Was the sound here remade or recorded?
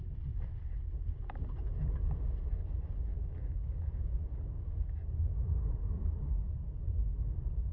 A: recorded